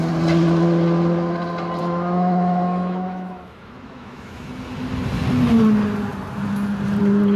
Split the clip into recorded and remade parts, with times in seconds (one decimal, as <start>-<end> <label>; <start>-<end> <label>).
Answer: 0.0-1.8 recorded; 1.8-4.5 remade; 4.5-7.4 recorded